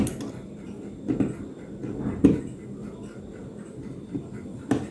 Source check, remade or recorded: recorded